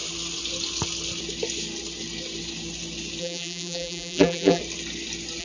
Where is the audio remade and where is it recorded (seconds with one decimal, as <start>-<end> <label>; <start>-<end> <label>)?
0.0-3.2 recorded; 3.2-4.6 remade; 4.6-5.4 recorded